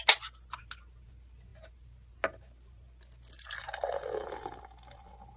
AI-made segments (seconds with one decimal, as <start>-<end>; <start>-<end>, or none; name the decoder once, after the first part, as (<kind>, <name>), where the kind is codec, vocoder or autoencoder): none